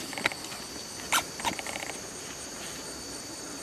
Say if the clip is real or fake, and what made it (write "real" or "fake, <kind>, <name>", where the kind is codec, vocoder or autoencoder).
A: real